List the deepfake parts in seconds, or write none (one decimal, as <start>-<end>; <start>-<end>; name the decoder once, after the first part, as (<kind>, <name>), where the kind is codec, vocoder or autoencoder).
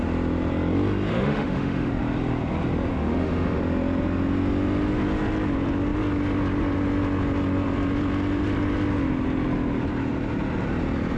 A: 1.1-1.9 (autoencoder, DAC-VAE); 2.9-3.6